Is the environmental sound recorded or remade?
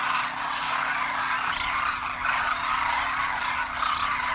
recorded